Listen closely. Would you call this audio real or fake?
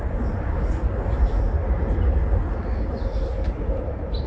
real